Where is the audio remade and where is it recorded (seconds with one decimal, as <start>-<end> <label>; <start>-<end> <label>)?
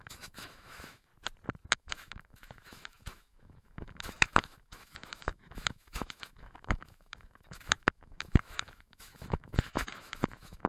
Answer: 0.0-1.1 remade; 1.1-1.7 recorded; 1.7-10.7 remade